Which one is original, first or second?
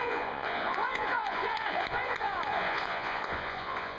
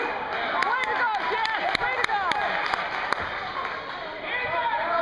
second